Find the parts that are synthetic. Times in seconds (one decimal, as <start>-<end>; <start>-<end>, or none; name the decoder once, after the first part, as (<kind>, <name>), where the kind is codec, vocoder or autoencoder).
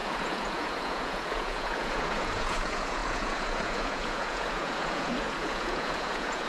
0.0-6.5 (vocoder, Vocos)